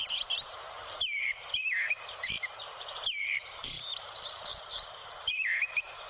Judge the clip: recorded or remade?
remade